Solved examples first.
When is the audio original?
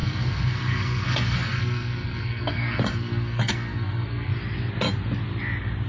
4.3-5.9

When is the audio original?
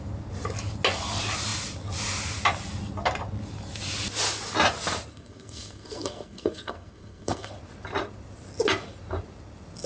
0.0-5.1; 7.5-9.9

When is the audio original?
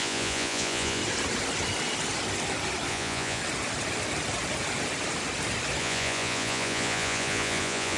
1.0-2.9; 3.4-5.8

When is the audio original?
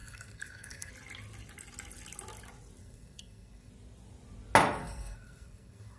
0.9-2.8; 3.7-4.8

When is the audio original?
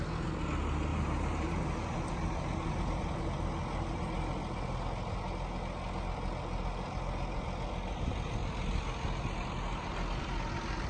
0.0-0.9; 3.2-10.9